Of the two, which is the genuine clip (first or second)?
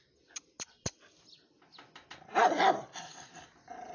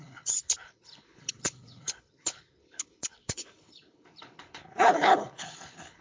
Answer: first